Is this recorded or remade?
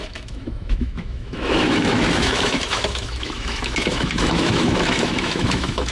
remade